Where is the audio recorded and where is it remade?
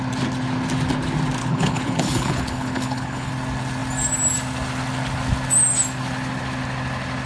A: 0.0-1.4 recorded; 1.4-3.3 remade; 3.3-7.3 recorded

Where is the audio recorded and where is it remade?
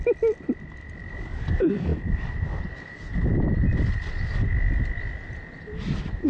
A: 0.0-4.5 remade; 4.5-5.6 recorded; 5.6-6.3 remade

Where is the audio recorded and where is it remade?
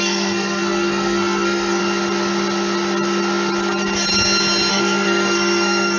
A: 0.0-1.8 remade; 1.8-4.7 recorded; 4.7-6.0 remade